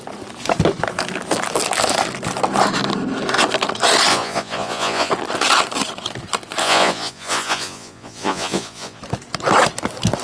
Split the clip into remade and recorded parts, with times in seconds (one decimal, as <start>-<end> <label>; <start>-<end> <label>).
0.0-4.1 recorded; 4.1-5.1 remade; 5.1-6.6 recorded; 6.6-9.0 remade; 9.0-10.2 recorded